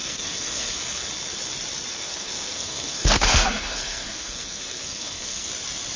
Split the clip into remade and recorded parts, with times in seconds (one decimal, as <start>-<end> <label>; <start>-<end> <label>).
0.0-1.1 remade; 1.1-1.9 recorded; 1.9-5.5 remade; 5.5-6.0 recorded